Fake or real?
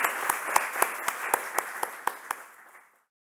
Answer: real